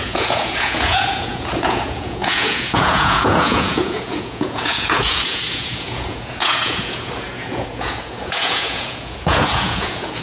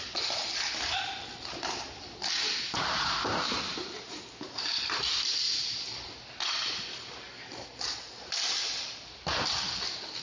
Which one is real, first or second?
second